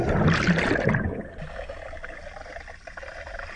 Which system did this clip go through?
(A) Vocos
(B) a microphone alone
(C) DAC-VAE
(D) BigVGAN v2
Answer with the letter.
B